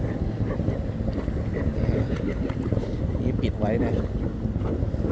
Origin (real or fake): real